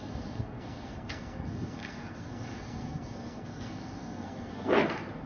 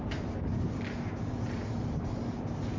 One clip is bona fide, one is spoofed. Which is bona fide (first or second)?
second